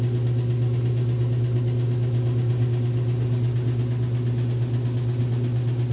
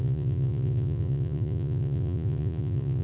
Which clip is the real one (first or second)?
first